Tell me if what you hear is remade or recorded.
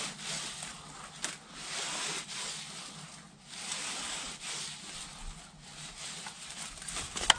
recorded